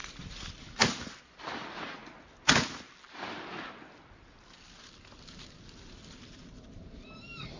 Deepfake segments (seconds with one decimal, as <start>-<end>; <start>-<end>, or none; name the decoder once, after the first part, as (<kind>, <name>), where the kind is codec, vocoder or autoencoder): 0.0-2.0 (vocoder, BigVGAN v2); 6.3-7.6